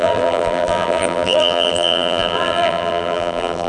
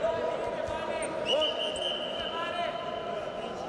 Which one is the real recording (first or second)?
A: second